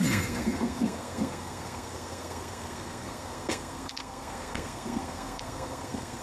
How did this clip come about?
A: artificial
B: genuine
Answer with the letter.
A